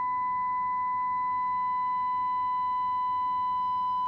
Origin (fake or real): real